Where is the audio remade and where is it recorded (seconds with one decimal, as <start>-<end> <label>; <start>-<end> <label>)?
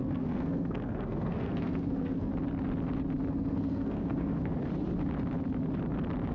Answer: 0.0-2.3 remade; 2.3-3.3 recorded; 3.3-4.6 remade; 4.6-6.3 recorded